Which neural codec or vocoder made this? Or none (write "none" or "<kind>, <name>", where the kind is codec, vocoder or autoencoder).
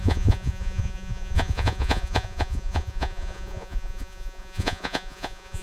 vocoder, Vocos